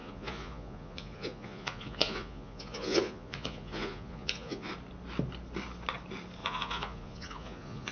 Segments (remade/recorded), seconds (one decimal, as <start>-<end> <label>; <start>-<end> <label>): 0.0-4.7 remade; 4.7-6.4 recorded; 6.4-7.9 remade